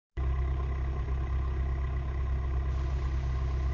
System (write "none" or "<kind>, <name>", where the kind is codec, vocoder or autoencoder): none